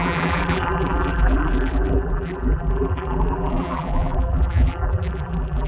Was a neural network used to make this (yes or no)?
yes